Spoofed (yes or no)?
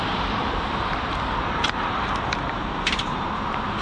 yes